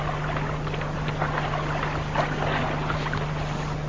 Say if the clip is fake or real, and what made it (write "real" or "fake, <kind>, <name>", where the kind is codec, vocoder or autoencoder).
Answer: real